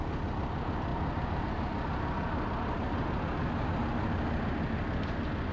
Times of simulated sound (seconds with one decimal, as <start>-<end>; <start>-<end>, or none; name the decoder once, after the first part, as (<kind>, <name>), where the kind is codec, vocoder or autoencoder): none

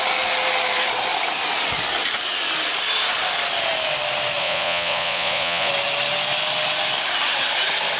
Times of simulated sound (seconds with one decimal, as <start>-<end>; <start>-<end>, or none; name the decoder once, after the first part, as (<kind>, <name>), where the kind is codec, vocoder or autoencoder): 4.4-5.7 (vocoder, Vocos)

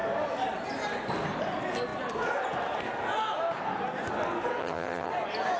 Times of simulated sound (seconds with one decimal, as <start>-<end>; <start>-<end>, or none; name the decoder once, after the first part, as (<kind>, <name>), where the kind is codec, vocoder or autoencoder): 4.6-5.1 (vocoder, HiFi-GAN)

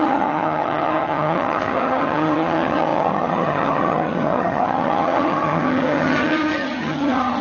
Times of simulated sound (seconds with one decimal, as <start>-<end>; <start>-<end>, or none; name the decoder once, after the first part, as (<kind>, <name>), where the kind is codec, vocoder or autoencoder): 0.0-7.4 (vocoder, HiFi-GAN)

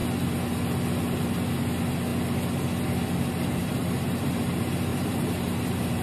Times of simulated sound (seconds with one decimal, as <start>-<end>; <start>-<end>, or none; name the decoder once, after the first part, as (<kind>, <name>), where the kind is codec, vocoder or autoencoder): 3.6-4.3 (vocoder, BigVGAN v2); 4.9-6.0

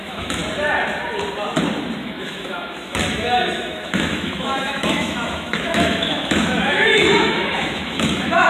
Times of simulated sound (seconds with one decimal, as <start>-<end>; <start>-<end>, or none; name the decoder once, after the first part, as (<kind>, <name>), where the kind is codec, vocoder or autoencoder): 0.0-0.4 (autoencoder, DAC-VAE); 2.0-8.5

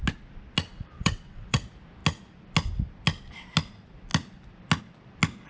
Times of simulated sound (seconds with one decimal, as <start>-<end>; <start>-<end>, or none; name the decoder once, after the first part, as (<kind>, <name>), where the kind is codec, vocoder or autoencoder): 0.7-1.6 (vocoder, WaveNeXt)